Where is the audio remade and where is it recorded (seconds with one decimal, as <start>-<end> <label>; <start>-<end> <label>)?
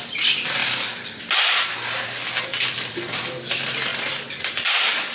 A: 0.0-0.6 recorded; 0.6-1.2 remade; 1.2-2.5 recorded; 2.5-3.2 remade; 3.2-5.1 recorded